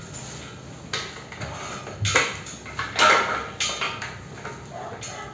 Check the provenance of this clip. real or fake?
real